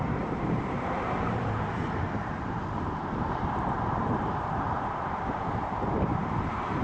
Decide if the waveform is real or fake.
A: fake